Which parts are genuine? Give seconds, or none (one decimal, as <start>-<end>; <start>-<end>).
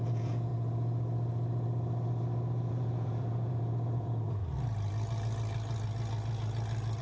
0.5-2.7; 4.4-7.0